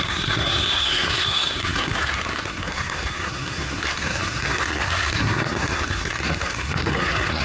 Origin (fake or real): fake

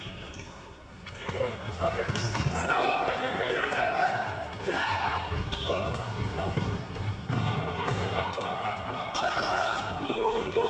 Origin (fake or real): fake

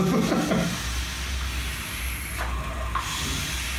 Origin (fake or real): real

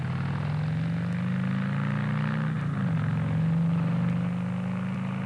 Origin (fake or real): real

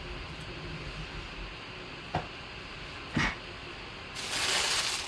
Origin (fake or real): real